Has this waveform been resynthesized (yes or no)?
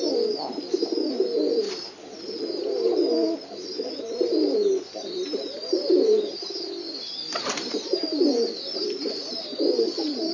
no